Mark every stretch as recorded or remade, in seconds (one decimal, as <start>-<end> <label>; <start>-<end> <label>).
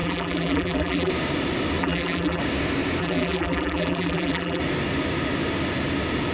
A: 0.0-1.1 remade; 1.1-1.8 recorded; 1.8-2.4 remade; 2.4-3.0 recorded; 3.0-4.6 remade; 4.6-6.3 recorded